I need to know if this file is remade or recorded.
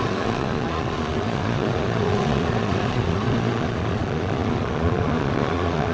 remade